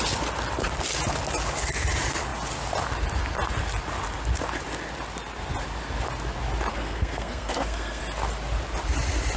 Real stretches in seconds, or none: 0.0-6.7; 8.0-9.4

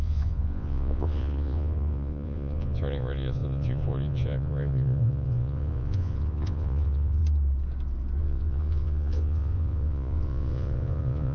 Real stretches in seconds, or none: 7.2-8.2

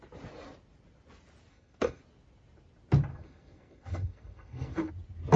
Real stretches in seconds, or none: 0.0-1.5; 2.0-3.1; 4.9-5.4